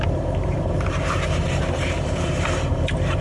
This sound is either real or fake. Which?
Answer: fake